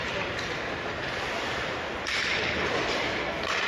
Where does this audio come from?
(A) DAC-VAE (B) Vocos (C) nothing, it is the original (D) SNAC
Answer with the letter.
C